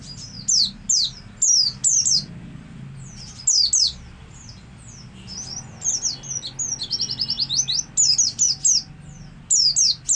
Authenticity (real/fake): real